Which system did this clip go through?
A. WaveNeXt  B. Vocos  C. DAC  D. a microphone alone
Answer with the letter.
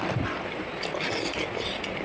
D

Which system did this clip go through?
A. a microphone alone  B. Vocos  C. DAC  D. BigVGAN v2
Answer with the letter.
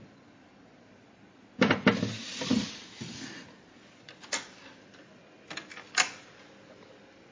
A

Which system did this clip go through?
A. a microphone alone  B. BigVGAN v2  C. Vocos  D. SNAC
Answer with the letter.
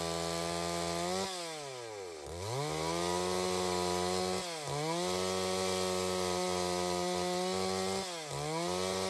A